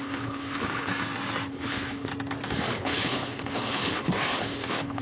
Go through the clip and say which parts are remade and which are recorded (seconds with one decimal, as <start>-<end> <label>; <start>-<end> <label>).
0.0-0.9 remade; 0.9-1.5 recorded; 1.5-2.1 remade; 2.1-2.7 recorded; 2.7-5.0 remade